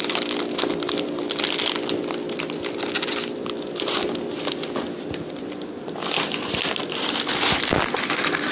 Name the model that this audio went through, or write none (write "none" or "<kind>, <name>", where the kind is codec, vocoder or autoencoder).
none